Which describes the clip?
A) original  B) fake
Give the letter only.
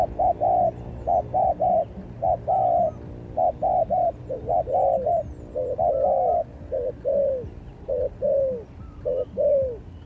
A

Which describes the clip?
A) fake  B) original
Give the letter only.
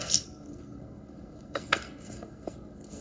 A